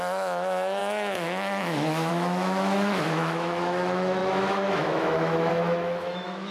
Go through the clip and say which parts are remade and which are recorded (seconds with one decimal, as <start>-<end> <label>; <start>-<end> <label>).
0.0-6.5 remade